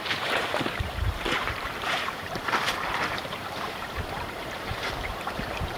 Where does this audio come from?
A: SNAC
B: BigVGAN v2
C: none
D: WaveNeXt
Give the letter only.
B